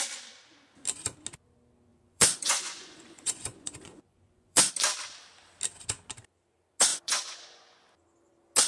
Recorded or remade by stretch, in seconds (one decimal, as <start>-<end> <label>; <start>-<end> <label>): 0.0-1.9 recorded; 1.9-4.7 remade; 4.7-6.9 recorded; 6.9-7.8 remade; 7.8-8.7 recorded